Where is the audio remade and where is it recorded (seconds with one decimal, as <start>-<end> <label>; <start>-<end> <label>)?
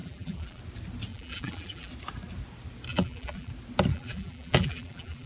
0.0-0.6 remade; 0.6-1.1 recorded; 1.1-1.9 remade; 1.9-2.9 recorded; 2.9-3.5 remade; 3.5-3.9 recorded; 3.9-5.3 remade